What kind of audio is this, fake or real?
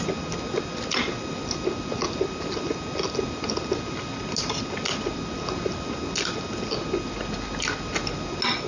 real